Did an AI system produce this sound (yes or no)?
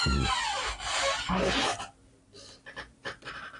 no